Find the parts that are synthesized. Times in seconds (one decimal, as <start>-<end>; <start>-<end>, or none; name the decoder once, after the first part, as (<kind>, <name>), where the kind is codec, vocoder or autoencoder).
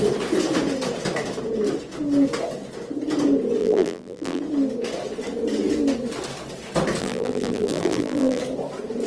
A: 3.6-4.4 (vocoder, BigVGAN v2); 7.0-8.4